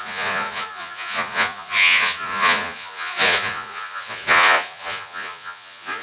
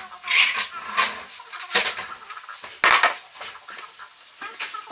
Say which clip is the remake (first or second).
first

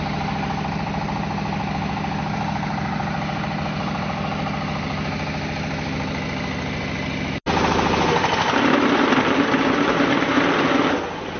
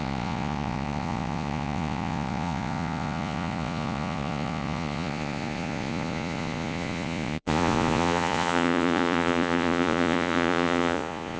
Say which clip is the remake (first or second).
second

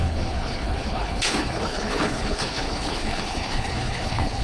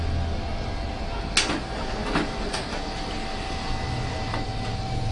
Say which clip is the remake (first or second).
first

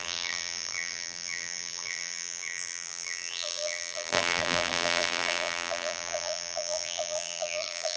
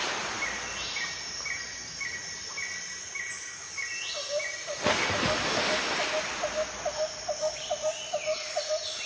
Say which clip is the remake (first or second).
first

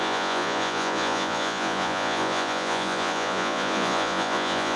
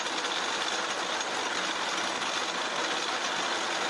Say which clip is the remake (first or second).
first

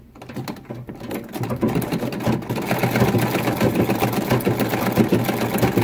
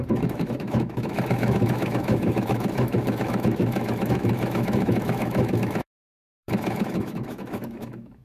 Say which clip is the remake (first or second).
second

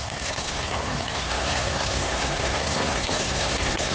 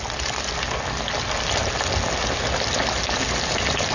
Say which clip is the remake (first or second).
first